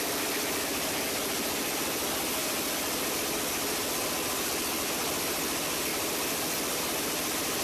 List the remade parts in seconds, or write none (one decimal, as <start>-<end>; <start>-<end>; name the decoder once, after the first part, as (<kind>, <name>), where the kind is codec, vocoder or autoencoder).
none